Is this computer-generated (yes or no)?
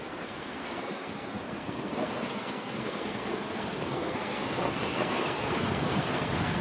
yes